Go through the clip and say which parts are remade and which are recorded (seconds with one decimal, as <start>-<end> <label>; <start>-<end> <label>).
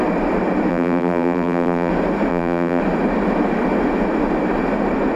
0.0-0.7 recorded; 0.7-1.9 remade; 1.9-2.3 recorded; 2.3-2.8 remade; 2.8-5.2 recorded